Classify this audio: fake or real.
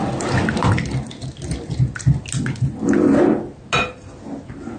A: real